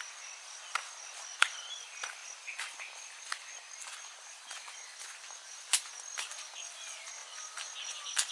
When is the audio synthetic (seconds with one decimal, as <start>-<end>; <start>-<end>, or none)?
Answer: none